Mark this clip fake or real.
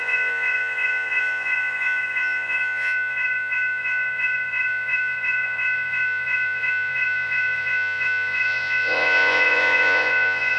fake